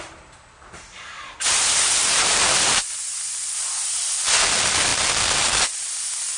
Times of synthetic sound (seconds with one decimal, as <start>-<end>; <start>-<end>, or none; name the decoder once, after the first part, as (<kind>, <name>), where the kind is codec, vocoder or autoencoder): 2.0-3.3 (vocoder, BigVGAN v2)